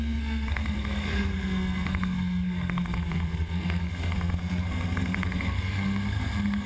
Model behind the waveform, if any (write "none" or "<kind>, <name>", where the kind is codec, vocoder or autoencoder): codec, SNAC